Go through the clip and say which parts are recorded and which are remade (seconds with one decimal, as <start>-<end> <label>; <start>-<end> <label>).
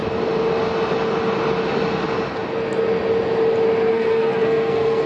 0.0-3.9 recorded; 3.9-5.1 remade